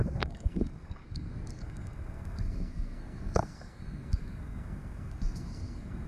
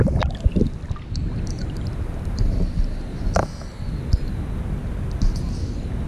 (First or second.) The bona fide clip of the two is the second